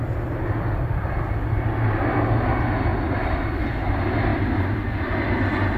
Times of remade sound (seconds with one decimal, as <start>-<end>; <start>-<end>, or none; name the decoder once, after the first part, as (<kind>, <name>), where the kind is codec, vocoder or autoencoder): 2.9-3.5 (vocoder, BigVGAN v2); 4.3-5.3